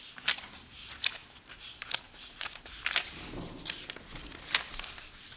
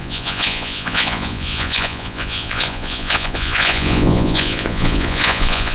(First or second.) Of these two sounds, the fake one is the second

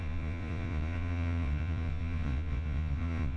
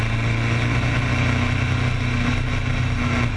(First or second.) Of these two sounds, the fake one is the first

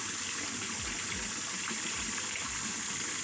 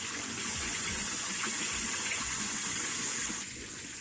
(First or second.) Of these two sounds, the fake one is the second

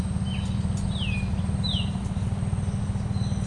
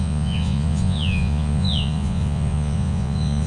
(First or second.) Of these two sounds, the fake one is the second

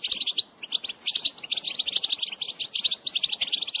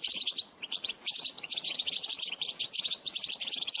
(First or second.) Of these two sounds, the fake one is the second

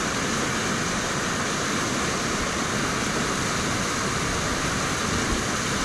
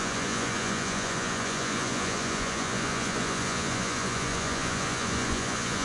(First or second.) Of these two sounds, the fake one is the second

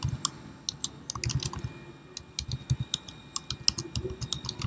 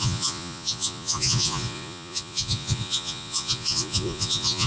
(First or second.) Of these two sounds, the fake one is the second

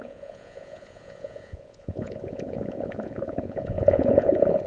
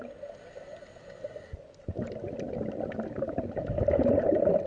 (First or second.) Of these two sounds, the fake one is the first